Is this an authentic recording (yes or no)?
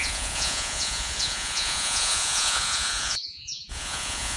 no